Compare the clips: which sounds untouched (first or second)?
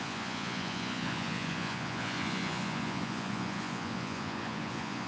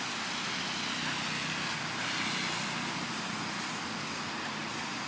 second